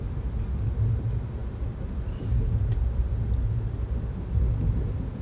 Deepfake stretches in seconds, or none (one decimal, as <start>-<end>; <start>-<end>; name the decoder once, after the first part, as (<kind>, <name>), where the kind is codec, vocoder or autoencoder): none